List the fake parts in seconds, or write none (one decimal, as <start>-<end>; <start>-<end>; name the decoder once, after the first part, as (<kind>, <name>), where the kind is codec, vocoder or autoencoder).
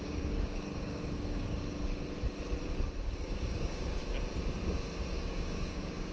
0.0-1.6 (codec, DAC); 3.0-4.0; 5.1-6.1